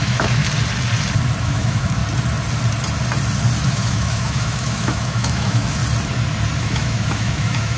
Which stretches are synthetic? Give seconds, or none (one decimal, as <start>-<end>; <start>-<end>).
0.0-0.4; 1.4-2.0; 3.7-5.8; 6.6-7.8